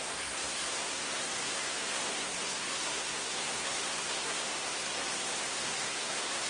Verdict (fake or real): fake